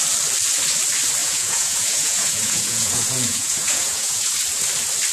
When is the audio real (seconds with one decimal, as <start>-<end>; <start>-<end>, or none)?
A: 0.0-1.2; 4.3-5.1